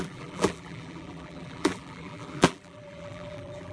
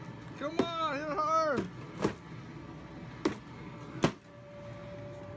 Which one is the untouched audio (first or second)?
second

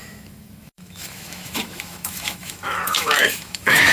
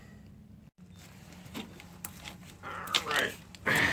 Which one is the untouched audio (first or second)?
second